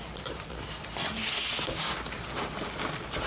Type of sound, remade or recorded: recorded